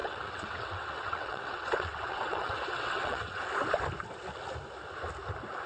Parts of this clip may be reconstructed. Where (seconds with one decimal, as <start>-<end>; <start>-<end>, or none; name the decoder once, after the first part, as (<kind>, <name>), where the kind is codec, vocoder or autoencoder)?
0.0-3.4 (vocoder, WaveNeXt)